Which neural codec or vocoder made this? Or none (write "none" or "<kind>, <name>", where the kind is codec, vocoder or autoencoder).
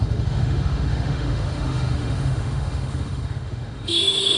autoencoder, DAC-VAE